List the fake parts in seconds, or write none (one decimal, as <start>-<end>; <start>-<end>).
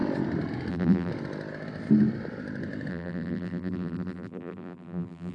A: 0.7-1.1; 2.9-5.3